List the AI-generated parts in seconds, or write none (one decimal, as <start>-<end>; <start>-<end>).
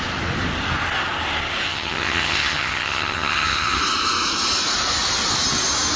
1.7-3.8